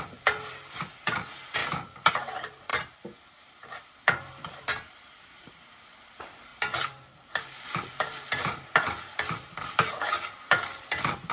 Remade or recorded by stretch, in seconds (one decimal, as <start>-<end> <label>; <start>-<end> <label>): 0.0-1.6 remade; 1.6-2.1 recorded; 2.1-2.7 remade; 2.7-3.5 recorded; 3.5-11.3 remade